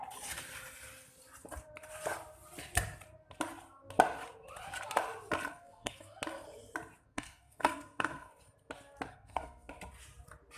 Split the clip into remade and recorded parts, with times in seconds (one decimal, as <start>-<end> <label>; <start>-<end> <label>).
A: 0.0-5.5 recorded; 5.5-6.2 remade; 6.2-7.0 recorded; 7.0-8.3 remade; 8.3-9.1 recorded; 9.1-9.7 remade; 9.7-10.6 recorded